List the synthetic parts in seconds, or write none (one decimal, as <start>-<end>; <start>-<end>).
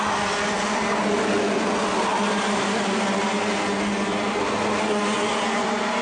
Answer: none